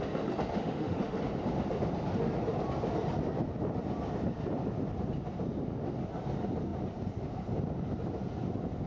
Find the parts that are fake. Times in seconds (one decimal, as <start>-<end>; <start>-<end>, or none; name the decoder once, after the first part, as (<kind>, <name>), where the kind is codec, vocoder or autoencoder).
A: 0.5-1.2 (autoencoder, DAC-VAE)